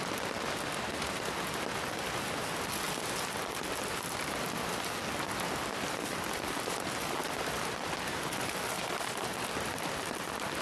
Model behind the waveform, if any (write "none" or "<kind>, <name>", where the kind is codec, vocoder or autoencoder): none